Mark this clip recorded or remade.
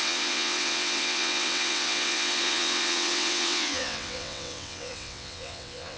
remade